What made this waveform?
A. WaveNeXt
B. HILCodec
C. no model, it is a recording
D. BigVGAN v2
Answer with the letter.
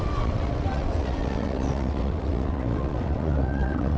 A